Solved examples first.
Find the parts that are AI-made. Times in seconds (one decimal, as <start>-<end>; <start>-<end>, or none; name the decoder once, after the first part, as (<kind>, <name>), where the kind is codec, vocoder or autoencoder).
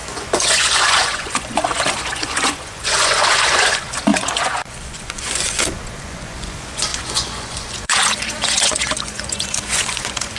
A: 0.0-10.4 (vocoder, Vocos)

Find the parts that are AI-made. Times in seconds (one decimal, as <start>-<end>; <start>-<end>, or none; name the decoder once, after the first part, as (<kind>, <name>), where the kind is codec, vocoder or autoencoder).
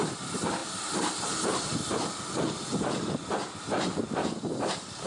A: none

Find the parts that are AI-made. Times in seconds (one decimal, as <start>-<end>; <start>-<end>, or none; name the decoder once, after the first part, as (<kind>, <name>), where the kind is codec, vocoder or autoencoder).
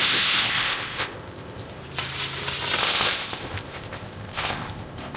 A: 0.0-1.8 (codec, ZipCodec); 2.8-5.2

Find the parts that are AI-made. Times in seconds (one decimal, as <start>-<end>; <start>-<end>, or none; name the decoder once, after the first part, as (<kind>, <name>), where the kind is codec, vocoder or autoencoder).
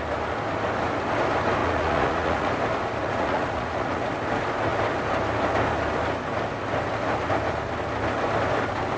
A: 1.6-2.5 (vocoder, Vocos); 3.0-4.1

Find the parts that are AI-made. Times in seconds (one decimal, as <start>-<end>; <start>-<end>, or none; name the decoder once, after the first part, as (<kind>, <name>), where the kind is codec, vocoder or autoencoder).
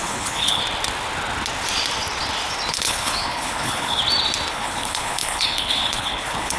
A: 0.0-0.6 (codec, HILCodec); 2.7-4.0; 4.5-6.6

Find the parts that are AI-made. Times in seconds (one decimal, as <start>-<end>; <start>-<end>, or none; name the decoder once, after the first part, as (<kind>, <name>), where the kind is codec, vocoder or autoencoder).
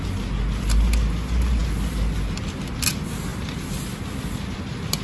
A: none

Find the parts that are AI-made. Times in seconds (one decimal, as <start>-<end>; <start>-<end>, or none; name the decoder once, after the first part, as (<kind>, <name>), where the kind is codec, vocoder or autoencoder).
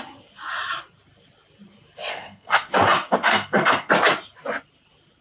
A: 2.1-2.7 (codec, SNAC); 3.3-3.9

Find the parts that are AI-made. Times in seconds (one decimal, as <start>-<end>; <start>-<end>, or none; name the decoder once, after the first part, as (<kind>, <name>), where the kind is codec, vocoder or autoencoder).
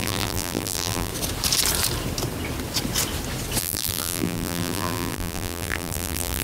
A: 0.0-1.1 (vocoder, BigVGAN v2); 3.6-6.4